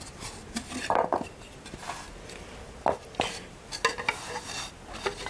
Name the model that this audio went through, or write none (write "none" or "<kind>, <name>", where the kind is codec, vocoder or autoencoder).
none